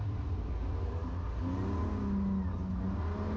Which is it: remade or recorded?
recorded